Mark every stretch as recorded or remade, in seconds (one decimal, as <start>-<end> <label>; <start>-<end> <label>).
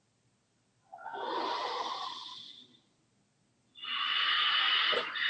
0.0-4.1 recorded; 4.1-4.6 remade; 4.6-5.3 recorded